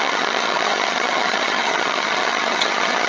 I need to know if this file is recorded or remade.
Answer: remade